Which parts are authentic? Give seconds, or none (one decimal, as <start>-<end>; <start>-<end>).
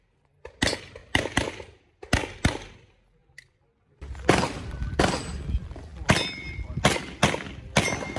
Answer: 0.0-1.0; 1.8-3.2; 5.0-5.9